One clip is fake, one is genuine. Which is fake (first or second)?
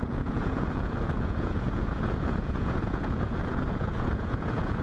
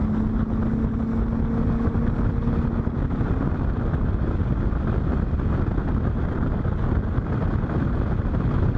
first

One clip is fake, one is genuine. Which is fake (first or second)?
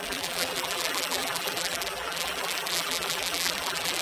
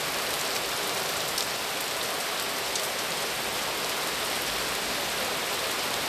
first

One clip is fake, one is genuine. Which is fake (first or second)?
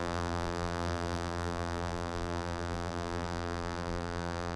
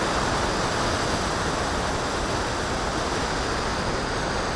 first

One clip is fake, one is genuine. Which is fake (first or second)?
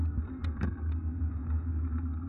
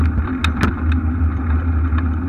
first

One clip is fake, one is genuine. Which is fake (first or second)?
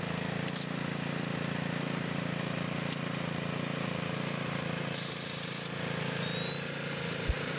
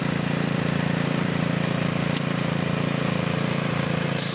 second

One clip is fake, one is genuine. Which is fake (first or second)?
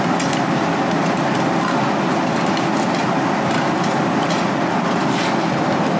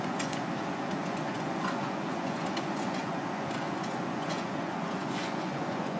second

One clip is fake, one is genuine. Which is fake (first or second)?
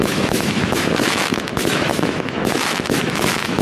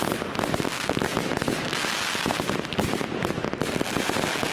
first